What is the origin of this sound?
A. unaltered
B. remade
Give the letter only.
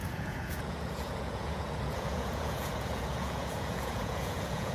B